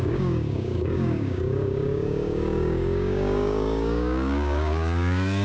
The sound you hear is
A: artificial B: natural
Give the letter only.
A